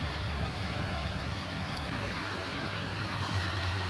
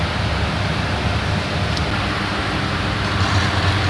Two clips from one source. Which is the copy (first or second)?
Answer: first